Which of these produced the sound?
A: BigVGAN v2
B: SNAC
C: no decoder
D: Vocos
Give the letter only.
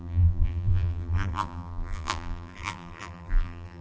A